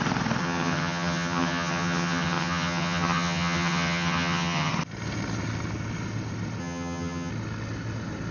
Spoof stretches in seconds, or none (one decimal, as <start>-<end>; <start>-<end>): 0.4-4.7; 6.6-7.3

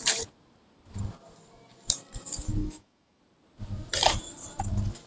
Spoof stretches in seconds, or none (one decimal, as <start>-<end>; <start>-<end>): 2.6-3.2

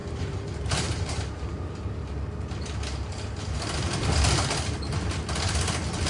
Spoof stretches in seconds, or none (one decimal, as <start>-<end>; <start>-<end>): 0.0-1.5

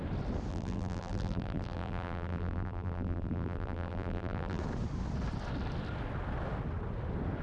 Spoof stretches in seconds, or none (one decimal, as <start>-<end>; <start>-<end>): 0.5-4.6

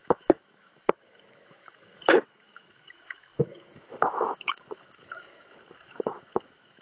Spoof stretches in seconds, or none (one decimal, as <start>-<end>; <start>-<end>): 0.0-6.8

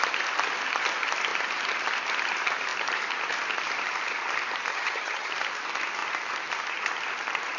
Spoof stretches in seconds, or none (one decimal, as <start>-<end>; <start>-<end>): 4.7-5.3

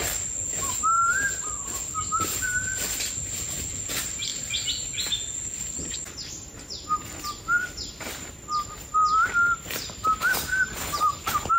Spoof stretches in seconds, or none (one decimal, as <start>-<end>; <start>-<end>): none